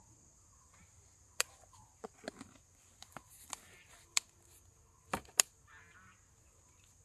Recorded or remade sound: recorded